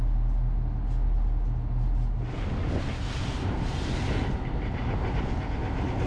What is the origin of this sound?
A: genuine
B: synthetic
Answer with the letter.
A